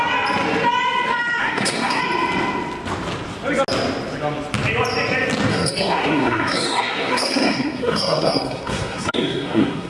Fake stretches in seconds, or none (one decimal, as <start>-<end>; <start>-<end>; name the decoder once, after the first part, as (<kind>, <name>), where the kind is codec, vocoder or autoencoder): 1.4-2.0 (codec, SNAC); 5.5-9.9